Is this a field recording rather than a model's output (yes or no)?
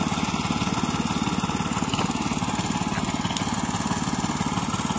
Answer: yes